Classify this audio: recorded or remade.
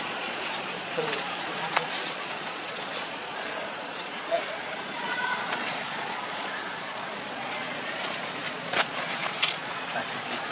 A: remade